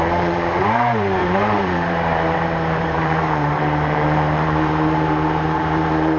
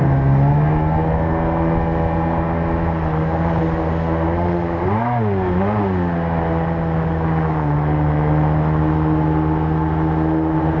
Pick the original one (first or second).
second